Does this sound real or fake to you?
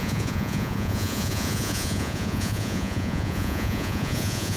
fake